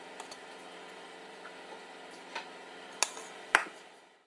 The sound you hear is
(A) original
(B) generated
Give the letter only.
A